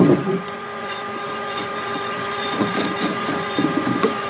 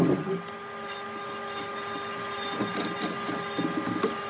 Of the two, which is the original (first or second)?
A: second